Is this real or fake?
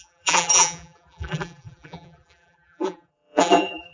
fake